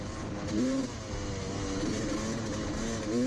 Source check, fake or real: real